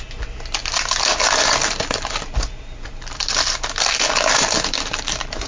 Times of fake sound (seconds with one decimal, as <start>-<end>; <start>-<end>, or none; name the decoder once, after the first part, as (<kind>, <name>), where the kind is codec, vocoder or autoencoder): none